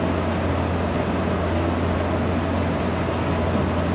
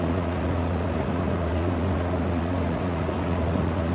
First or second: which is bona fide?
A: first